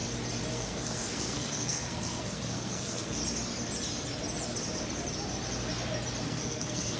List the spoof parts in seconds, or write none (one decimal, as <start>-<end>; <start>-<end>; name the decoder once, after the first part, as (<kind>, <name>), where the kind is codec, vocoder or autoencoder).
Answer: 0.5-3.2 (codec, SNAC); 6.2-7.0